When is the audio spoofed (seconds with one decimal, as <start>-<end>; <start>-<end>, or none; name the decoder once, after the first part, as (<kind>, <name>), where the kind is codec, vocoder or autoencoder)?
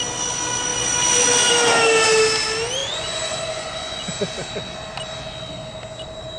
2.8-4.0 (vocoder, Vocos)